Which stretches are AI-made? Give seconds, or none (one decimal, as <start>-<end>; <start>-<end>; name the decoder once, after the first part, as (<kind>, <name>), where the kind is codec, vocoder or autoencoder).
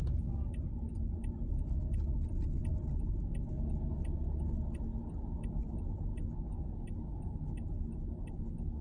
none